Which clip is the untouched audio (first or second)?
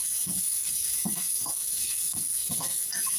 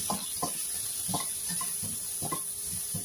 second